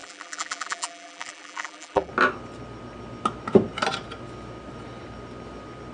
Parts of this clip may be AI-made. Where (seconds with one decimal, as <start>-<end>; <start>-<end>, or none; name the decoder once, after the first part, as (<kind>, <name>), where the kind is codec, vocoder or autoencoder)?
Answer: 0.0-2.1 (vocoder, BigVGAN v2)